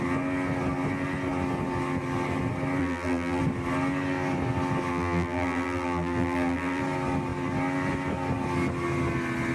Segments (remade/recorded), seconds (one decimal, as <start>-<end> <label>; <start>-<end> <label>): 0.0-2.8 recorded; 2.8-3.4 remade; 3.4-4.9 recorded; 4.9-6.8 remade; 6.8-9.5 recorded